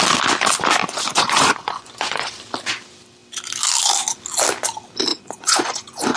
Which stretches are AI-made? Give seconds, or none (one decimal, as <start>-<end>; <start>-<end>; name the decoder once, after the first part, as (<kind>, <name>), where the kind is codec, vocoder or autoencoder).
0.8-2.3 (vocoder, Vocos); 5.1-6.2